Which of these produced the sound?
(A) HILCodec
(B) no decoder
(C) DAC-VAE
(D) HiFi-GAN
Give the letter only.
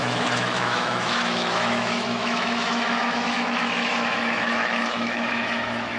C